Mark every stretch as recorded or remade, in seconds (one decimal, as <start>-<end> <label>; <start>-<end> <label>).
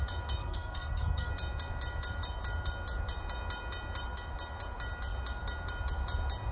0.0-0.4 recorded; 0.4-1.3 remade; 1.3-6.5 recorded